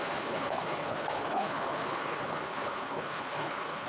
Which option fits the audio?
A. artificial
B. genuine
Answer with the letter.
A